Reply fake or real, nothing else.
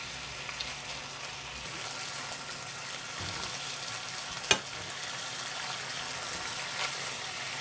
real